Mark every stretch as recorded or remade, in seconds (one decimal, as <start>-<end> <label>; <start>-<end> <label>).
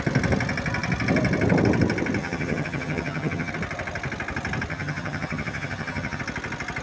0.0-2.2 recorded; 2.2-3.5 remade; 3.5-4.7 recorded; 4.7-6.2 remade; 6.2-6.8 recorded